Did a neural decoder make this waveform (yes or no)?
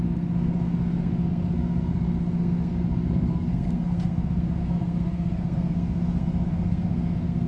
yes